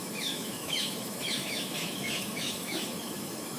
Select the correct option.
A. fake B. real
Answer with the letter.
A